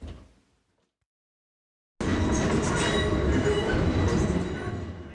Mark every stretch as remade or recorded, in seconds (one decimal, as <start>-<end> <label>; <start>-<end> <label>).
0.0-5.1 recorded